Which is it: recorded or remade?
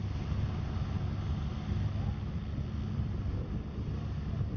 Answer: recorded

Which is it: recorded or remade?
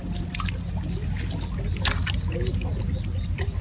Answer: recorded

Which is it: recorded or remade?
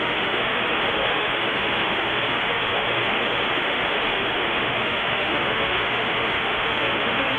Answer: remade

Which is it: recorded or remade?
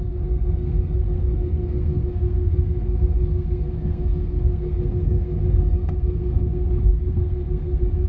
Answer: remade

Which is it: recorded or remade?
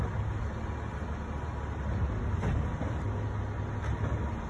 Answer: recorded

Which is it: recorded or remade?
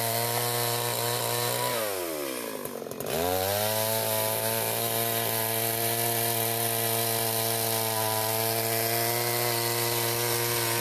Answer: recorded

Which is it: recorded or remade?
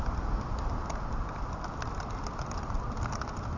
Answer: recorded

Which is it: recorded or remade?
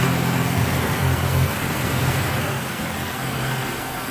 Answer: remade